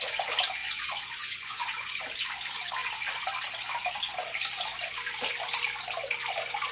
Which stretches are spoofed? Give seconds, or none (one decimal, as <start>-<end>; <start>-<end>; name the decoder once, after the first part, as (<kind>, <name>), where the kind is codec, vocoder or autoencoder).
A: 0.6-2.0 (vocoder, Vocos)